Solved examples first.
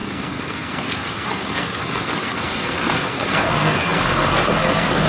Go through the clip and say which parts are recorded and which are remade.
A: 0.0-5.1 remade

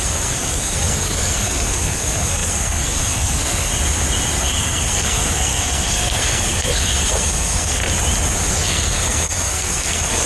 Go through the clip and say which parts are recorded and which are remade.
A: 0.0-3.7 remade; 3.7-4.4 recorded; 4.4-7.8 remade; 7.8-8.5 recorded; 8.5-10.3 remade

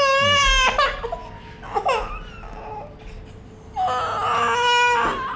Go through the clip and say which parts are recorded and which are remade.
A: 0.0-5.4 recorded

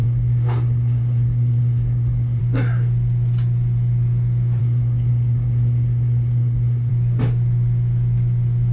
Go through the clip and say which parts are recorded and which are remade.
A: 0.0-2.4 remade; 2.4-4.6 recorded; 4.6-6.9 remade; 6.9-8.7 recorded

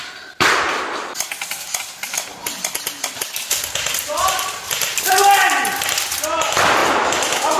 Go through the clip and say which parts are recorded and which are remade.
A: 0.0-7.6 recorded

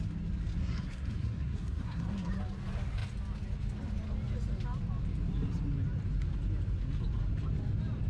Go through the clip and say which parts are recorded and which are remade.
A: 0.0-0.6 recorded; 0.6-2.3 remade; 2.3-8.1 recorded

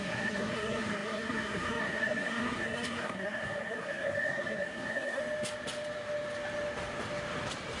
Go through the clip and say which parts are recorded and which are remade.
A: 0.0-5.2 remade; 5.2-7.8 recorded